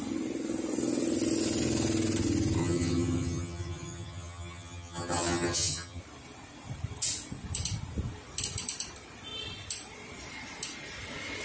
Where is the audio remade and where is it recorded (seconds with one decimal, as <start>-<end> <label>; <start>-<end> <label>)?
0.0-2.6 recorded; 2.6-6.0 remade; 6.0-11.4 recorded